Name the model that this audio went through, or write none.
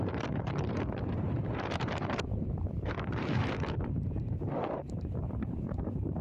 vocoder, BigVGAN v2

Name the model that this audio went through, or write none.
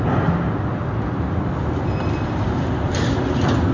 none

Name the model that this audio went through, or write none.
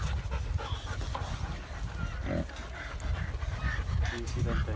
none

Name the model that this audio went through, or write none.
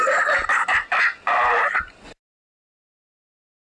none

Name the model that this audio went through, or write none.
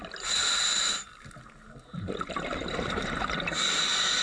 none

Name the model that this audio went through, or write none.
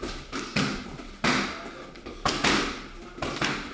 none